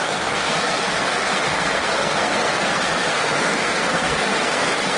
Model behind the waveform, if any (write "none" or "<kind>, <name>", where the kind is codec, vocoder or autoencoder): codec, SNAC